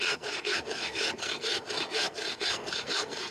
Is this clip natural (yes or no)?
no